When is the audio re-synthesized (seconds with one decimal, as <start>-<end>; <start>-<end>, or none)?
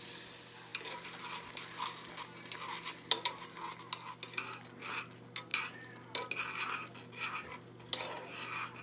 none